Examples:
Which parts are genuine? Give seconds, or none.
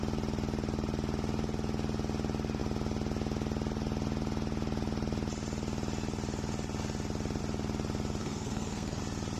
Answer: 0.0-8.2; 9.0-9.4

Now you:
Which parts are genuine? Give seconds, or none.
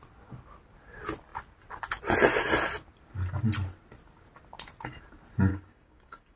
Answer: 0.0-5.5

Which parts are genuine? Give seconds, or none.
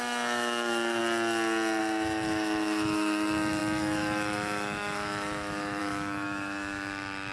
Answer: 1.0-1.8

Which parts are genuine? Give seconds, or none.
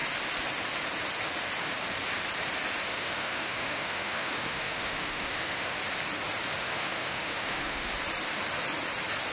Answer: 0.0-2.9; 5.8-6.6; 7.9-9.3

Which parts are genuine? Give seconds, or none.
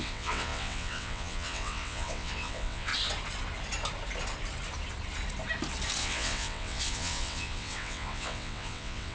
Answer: 2.9-6.0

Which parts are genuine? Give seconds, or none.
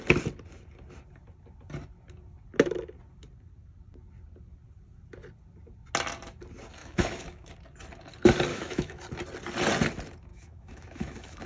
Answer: 0.0-6.8; 7.5-8.5; 9.0-10.3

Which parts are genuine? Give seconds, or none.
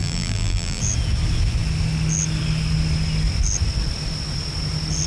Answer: 0.8-5.1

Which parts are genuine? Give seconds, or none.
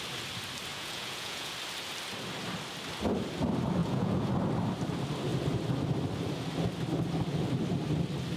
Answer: 0.0-0.7; 1.5-3.8; 4.3-8.4